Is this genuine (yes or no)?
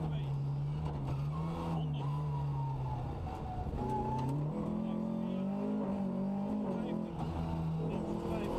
yes